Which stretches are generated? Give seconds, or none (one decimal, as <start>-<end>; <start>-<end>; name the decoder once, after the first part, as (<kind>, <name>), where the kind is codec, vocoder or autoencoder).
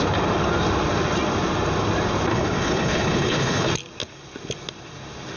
2.3-3.7 (codec, HILCodec)